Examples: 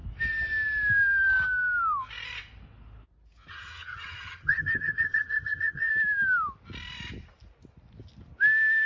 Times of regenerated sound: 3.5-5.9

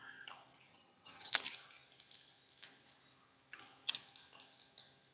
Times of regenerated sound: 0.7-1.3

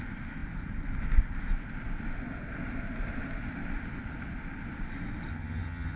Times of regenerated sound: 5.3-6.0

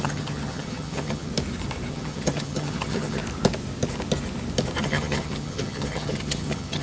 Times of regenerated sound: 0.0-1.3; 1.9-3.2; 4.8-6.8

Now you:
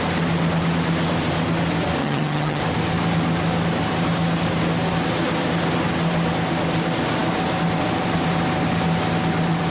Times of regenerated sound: 2.0-2.6